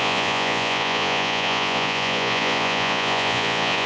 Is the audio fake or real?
fake